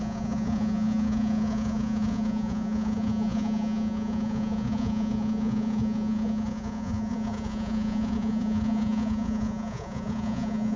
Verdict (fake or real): fake